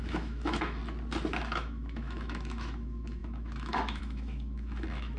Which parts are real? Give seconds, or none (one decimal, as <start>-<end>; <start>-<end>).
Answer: 0.8-1.4